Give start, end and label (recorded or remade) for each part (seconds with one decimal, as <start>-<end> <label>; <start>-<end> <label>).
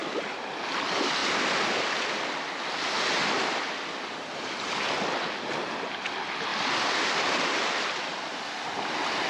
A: 0.0-0.7 remade; 0.7-1.2 recorded; 1.2-1.9 remade; 1.9-6.5 recorded; 6.5-7.4 remade; 7.4-9.3 recorded